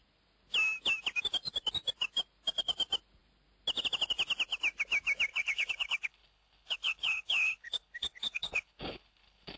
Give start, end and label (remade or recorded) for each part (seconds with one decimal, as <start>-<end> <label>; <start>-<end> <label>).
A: 0.0-5.3 recorded; 5.3-9.6 remade